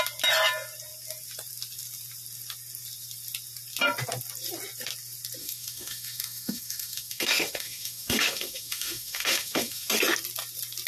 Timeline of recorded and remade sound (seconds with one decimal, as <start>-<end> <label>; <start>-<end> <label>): 0.0-5.4 recorded; 5.4-9.9 remade; 9.9-10.9 recorded